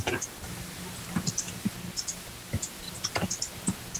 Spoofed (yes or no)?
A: no